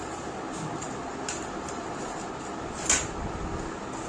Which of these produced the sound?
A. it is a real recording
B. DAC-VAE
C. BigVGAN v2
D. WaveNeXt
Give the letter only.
A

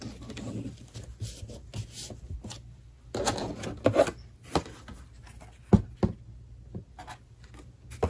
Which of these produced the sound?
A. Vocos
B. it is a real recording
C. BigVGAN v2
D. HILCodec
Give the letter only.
B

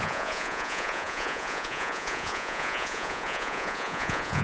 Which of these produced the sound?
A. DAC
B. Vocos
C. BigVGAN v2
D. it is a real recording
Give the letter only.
B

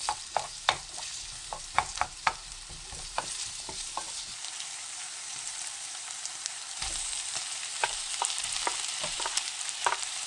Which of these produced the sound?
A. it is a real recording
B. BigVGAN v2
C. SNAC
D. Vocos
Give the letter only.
B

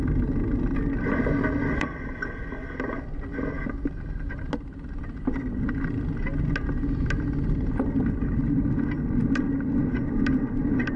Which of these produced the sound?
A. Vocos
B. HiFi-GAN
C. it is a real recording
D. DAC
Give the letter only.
C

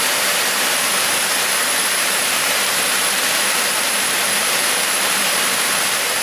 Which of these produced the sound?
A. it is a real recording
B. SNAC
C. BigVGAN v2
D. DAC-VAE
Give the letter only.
C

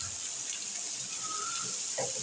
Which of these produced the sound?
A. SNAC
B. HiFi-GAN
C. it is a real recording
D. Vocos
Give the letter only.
C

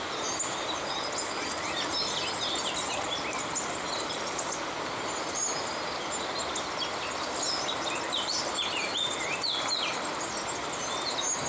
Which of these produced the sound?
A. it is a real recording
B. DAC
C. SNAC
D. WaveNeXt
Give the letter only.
A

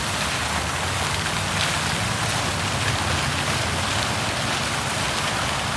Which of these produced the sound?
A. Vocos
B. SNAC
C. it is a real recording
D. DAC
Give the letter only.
C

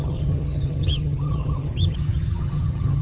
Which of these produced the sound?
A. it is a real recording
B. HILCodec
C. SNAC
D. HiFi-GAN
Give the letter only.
D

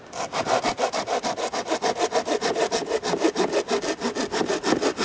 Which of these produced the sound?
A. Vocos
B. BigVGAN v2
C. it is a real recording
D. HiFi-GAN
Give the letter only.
C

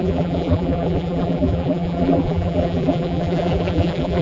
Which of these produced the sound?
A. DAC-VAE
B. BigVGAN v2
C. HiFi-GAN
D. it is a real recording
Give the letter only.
B